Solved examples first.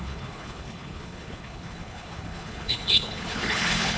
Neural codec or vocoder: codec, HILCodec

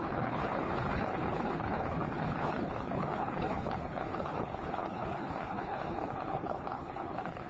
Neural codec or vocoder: codec, HILCodec